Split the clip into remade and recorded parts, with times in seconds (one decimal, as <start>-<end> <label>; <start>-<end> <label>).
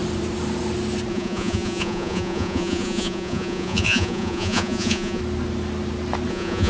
0.0-1.1 recorded; 1.1-5.2 remade; 5.2-6.3 recorded; 6.3-6.7 remade